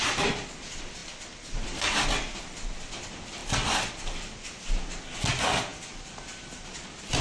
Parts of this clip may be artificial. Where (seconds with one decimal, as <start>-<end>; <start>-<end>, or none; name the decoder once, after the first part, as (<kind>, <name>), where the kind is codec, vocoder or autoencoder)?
none